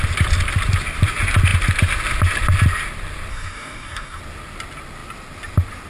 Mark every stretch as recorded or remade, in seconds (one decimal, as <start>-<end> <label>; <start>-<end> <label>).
0.0-3.3 recorded; 3.3-4.2 remade; 4.2-5.9 recorded